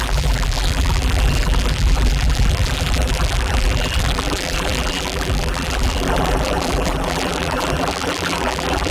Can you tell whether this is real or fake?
fake